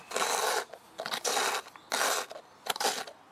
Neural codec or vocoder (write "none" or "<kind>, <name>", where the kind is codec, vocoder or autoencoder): none